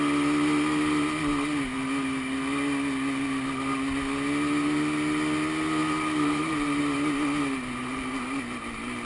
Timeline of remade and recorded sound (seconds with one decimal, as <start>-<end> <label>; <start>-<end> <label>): 0.0-5.8 recorded; 5.8-6.8 remade; 6.8-9.1 recorded